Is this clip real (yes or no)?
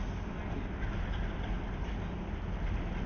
yes